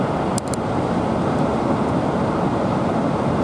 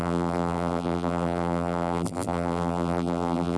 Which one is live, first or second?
first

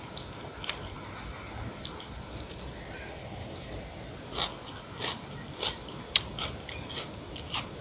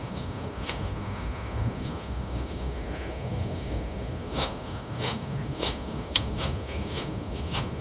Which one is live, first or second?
first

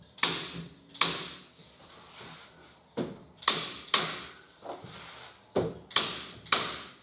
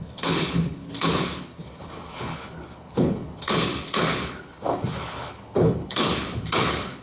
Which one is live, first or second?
first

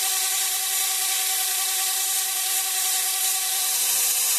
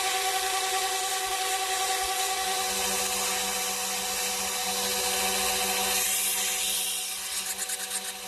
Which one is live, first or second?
second